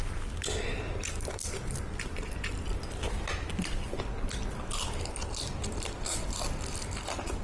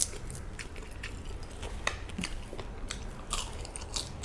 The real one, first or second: first